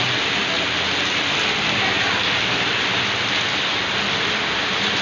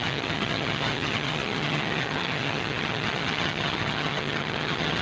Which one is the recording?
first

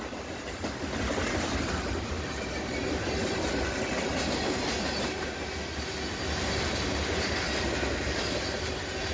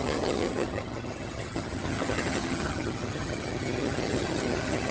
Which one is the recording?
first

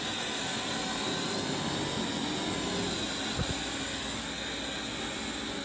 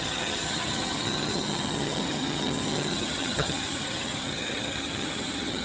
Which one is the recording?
first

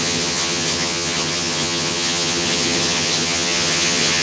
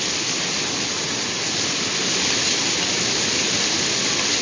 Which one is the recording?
second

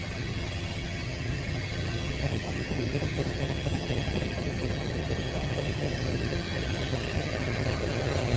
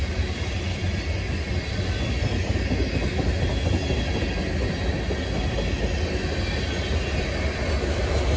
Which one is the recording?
second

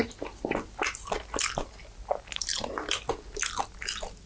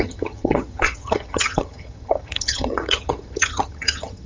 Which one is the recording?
first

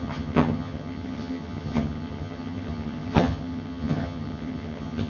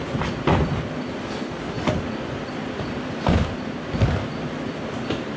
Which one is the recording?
second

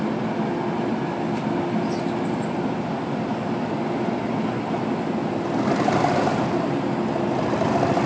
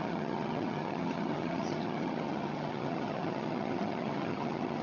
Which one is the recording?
first